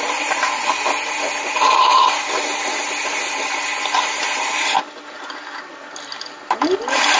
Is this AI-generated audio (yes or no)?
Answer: no